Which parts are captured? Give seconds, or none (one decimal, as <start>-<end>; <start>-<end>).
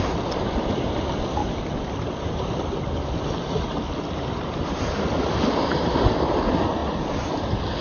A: 0.0-7.8